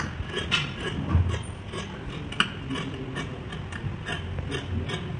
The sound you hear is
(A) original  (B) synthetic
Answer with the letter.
A